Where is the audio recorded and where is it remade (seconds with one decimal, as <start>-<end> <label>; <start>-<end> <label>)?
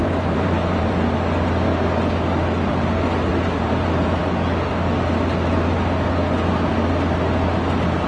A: 0.0-0.9 remade; 0.9-3.3 recorded; 3.3-4.2 remade; 4.2-8.1 recorded